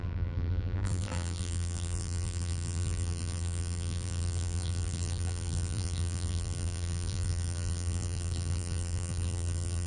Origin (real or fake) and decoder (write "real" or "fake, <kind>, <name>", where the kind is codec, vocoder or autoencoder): fake, vocoder, BigVGAN v2